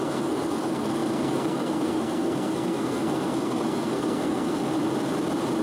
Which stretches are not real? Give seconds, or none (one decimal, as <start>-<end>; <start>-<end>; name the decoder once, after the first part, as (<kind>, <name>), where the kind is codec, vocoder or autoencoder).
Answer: 0.0-4.6 (codec, SNAC)